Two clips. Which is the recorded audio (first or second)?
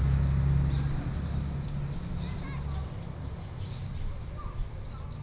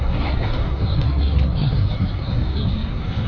first